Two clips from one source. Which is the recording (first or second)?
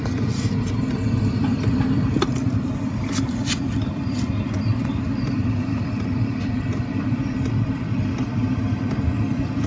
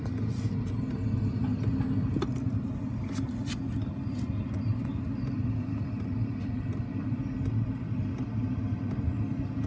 second